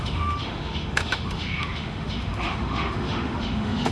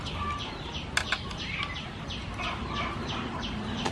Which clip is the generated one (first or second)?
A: first